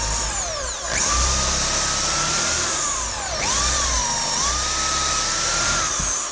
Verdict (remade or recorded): recorded